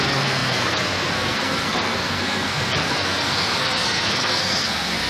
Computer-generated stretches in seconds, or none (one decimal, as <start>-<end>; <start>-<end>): 0.0-5.1